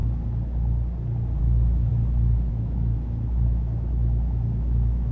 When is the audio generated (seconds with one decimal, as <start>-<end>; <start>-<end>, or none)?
1.4-1.9; 2.5-5.1

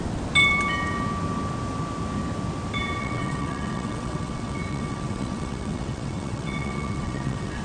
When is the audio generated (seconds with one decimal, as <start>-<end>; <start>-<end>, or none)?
3.0-7.6